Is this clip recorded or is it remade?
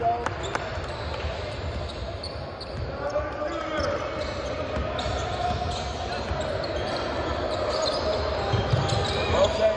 recorded